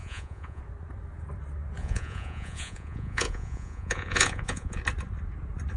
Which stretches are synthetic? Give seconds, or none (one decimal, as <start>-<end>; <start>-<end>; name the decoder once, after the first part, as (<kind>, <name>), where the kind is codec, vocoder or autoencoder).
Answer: 0.0-0.6 (vocoder, Vocos); 1.8-4.8